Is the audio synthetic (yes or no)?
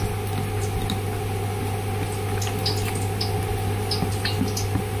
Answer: no